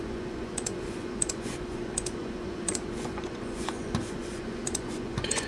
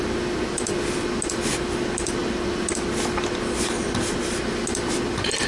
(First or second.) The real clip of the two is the second